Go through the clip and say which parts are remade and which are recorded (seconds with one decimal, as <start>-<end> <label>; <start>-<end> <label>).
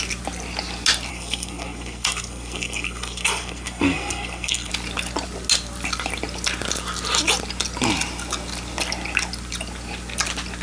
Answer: 0.0-1.1 recorded; 1.1-4.7 remade; 4.7-10.6 recorded